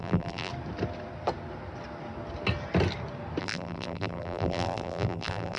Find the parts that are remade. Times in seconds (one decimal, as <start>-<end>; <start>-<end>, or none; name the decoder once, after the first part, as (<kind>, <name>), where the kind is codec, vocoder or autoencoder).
0.0-0.5 (vocoder, BigVGAN v2); 3.4-5.6